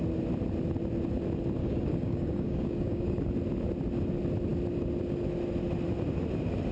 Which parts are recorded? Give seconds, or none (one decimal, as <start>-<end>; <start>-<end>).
0.0-1.6; 3.2-6.7